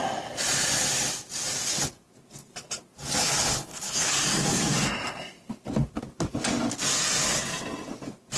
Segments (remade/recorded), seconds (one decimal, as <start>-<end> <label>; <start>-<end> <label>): 0.0-3.2 recorded; 3.2-4.1 remade; 4.1-8.4 recorded